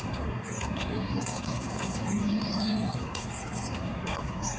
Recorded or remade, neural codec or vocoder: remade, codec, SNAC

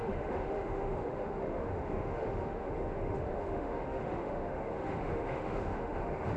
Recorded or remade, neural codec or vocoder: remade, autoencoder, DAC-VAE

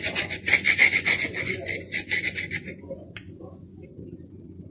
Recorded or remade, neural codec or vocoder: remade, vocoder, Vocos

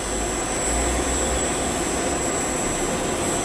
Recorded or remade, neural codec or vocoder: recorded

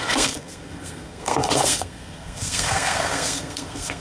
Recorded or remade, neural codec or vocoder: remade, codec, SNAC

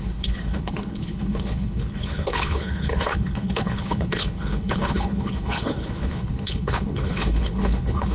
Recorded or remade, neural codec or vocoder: remade, codec, HILCodec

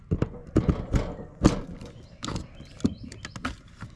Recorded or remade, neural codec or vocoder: recorded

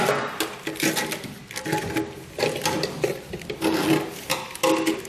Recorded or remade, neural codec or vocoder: recorded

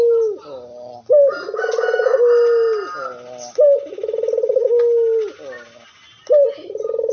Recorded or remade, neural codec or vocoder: recorded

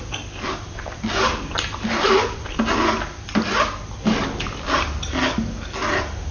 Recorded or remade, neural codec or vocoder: recorded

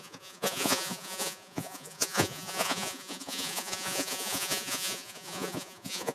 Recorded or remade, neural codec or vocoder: remade, vocoder, Vocos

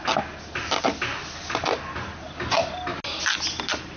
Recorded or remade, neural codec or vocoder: recorded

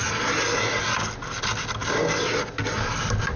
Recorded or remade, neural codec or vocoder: recorded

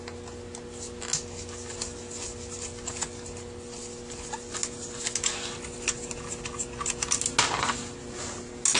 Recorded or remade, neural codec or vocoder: recorded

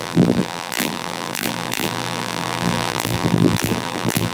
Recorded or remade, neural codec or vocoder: remade, vocoder, BigVGAN v2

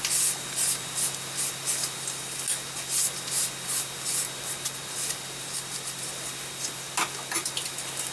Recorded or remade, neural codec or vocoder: recorded